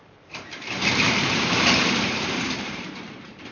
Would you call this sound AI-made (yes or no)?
yes